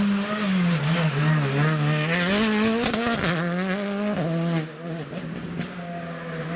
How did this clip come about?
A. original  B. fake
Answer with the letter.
A